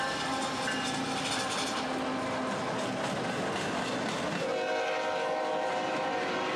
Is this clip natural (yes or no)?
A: yes